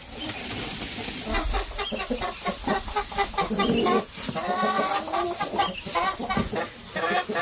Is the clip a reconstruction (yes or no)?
no